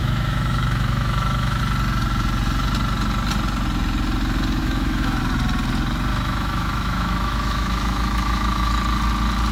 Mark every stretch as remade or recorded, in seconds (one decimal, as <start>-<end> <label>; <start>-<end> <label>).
0.0-1.6 remade; 1.6-4.6 recorded; 4.6-5.2 remade; 5.2-6.1 recorded; 6.1-8.7 remade; 8.7-9.5 recorded